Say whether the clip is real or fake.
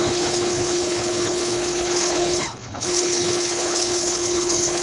fake